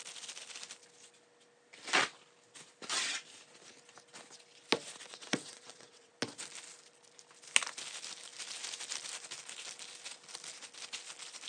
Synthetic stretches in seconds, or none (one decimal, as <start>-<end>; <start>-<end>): 5.1-6.1